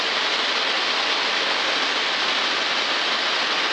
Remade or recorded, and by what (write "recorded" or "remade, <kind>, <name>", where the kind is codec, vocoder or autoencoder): recorded